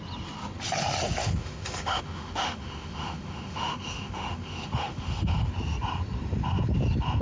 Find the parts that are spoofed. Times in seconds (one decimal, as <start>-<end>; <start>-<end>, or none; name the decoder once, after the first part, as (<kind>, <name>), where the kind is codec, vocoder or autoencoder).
1.2-5.5 (autoencoder, DAC-VAE)